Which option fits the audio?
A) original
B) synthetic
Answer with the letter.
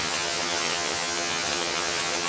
B